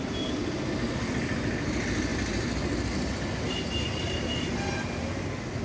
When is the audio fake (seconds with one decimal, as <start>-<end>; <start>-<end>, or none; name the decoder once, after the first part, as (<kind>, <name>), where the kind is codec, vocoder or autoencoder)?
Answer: none